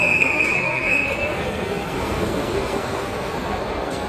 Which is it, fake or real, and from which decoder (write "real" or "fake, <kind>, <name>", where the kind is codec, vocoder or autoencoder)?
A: fake, codec, SNAC